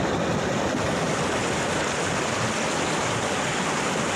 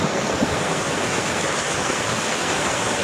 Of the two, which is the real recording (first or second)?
first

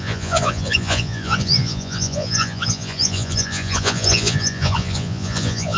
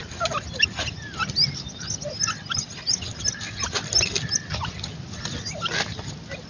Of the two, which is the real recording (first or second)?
second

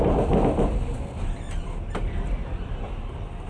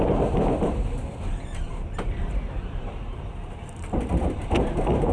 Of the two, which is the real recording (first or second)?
first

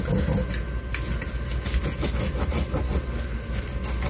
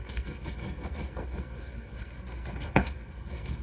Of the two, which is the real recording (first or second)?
first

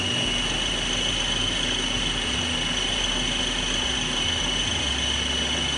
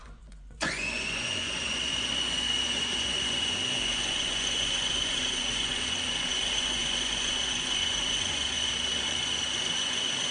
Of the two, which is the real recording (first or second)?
first